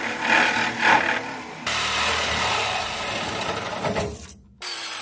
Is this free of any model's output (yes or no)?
no